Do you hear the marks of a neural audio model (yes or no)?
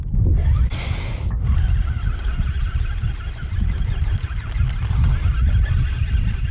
no